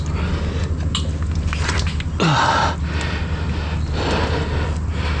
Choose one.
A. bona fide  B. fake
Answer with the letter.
A